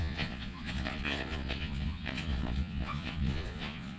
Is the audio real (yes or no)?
no